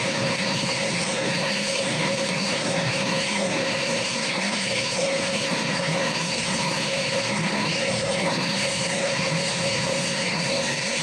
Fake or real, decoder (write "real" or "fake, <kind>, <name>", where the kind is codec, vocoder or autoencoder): fake, codec, SNAC